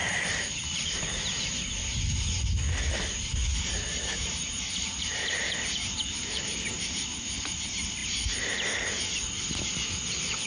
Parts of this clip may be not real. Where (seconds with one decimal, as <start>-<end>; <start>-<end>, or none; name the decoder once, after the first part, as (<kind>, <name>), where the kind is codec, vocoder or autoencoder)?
0.0-1.4 (vocoder, BigVGAN v2); 3.5-7.6

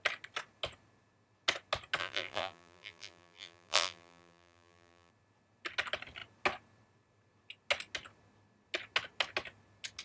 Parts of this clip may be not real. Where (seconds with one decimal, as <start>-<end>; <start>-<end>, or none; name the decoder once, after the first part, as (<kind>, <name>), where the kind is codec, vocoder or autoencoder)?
2.0-5.1 (vocoder, BigVGAN v2)

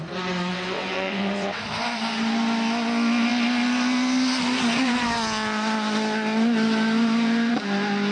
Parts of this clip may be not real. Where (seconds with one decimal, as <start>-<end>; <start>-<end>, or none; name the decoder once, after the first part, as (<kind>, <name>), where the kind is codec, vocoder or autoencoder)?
0.5-1.6 (vocoder, WaveNeXt)

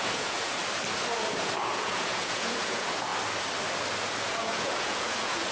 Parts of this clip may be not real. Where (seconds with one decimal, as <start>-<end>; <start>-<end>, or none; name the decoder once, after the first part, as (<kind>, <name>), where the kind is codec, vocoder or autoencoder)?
0.0-0.6 (vocoder, Vocos); 1.6-3.1; 4.2-5.5

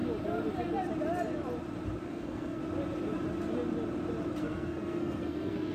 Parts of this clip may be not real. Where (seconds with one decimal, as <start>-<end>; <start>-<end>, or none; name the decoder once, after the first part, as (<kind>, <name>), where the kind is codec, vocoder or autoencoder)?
2.0-2.6 (codec, SNAC); 4.4-5.7